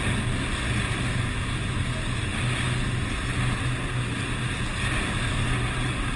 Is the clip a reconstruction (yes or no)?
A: no